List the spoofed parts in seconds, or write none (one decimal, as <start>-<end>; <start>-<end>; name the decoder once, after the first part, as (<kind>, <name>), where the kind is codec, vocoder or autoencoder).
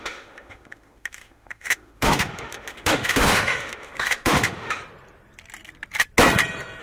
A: 0.0-4.8 (autoencoder, DAC-VAE)